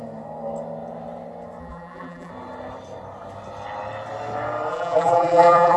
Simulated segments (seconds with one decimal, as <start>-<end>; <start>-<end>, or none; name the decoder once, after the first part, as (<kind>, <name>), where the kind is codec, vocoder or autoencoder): 1.6-2.3 (vocoder, BigVGAN v2); 4.7-5.8